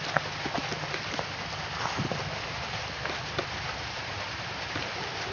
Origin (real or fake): real